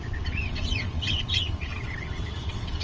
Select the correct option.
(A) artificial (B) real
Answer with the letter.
A